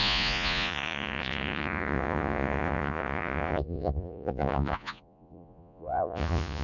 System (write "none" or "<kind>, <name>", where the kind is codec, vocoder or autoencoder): vocoder, Vocos